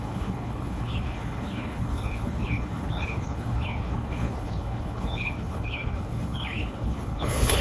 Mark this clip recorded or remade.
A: remade